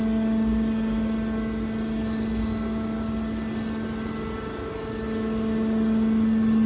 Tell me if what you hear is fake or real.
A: real